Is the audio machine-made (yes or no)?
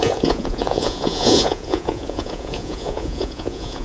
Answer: yes